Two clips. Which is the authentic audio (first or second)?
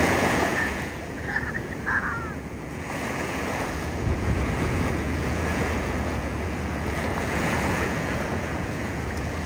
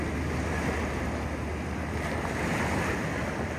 second